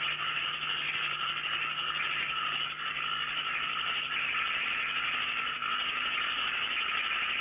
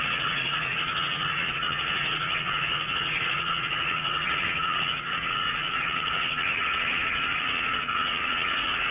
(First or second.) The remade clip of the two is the second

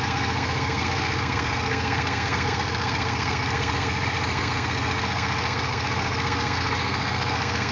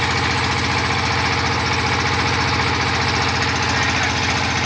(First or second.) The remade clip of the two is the first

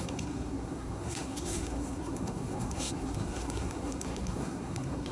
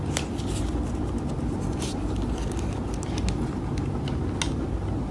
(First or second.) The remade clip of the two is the first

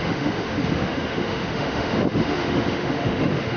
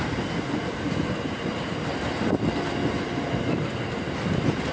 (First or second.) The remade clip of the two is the first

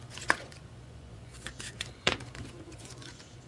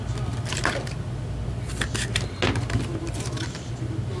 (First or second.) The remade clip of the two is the first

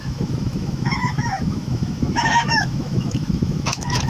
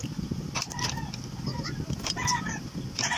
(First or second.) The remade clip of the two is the first